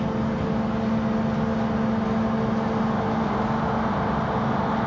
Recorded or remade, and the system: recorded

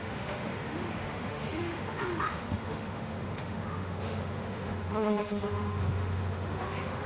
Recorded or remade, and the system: remade, autoencoder, DAC-VAE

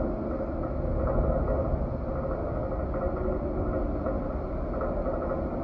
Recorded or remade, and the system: recorded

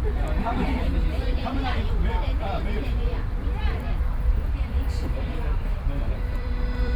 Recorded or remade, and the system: remade, vocoder, BigVGAN v2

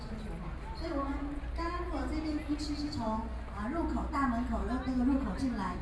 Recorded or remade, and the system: recorded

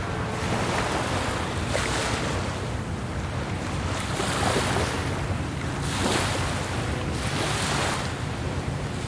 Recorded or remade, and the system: recorded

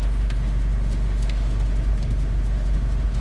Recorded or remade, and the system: remade, autoencoder, DAC-VAE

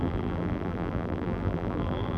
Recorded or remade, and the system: remade, vocoder, BigVGAN v2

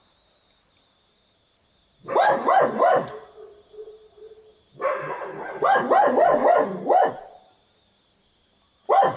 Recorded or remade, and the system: recorded